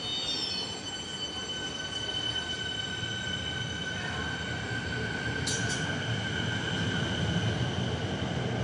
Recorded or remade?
recorded